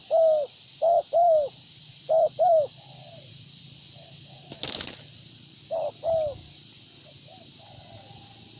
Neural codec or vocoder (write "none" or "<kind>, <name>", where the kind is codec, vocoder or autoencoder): none